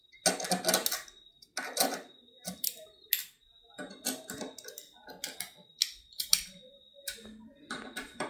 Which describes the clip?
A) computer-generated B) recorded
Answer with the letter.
B